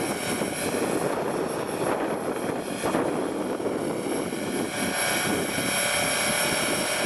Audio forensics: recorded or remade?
recorded